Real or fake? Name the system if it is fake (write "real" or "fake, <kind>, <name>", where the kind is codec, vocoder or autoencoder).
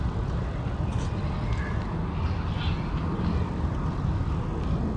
real